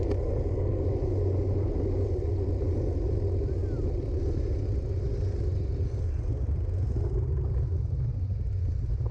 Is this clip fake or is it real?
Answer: real